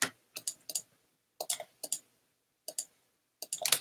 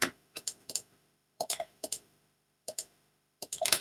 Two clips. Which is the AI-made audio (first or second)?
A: second